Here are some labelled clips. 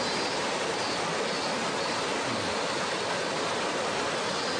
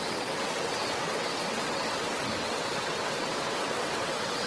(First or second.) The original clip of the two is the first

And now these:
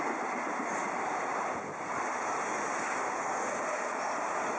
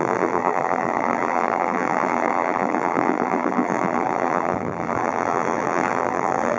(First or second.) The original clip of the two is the first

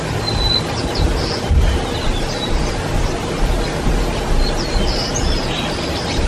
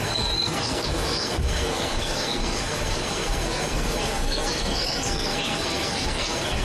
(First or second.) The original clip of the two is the first